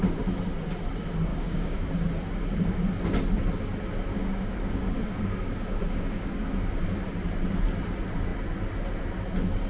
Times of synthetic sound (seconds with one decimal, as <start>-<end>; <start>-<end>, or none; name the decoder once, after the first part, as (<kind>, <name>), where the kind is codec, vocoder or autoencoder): 1.3-1.9 (codec, DAC); 4.1-6.7